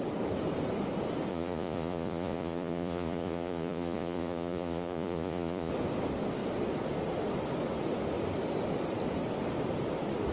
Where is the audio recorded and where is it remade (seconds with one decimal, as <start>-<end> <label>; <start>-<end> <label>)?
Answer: 0.0-1.3 recorded; 1.3-5.7 remade; 5.7-10.3 recorded